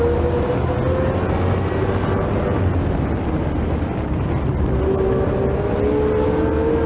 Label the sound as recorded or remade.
recorded